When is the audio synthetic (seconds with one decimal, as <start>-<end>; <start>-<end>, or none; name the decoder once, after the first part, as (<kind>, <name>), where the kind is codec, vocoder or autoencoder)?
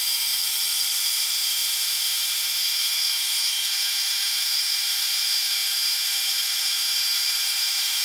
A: 0.0-0.4 (autoencoder, DAC-VAE); 1.0-8.0